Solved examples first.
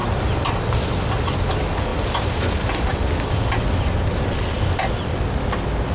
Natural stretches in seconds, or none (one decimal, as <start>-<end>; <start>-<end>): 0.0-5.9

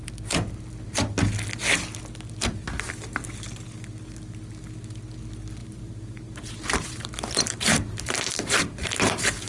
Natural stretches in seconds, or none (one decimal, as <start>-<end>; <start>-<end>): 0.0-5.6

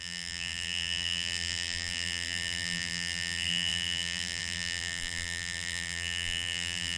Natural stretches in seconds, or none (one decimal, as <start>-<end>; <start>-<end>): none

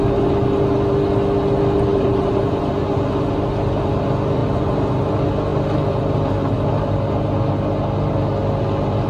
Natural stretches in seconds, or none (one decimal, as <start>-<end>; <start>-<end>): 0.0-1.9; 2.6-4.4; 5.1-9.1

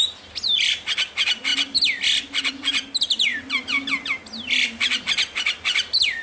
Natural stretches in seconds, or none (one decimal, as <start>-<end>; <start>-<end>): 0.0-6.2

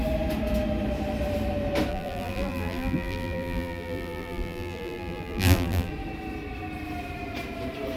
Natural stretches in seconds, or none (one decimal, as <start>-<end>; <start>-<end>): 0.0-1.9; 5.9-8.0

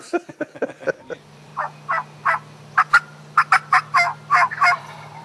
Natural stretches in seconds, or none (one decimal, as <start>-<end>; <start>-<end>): 1.5-4.5